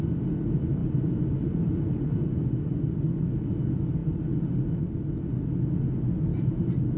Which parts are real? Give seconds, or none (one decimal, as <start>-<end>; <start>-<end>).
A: 0.0-0.8; 2.3-6.3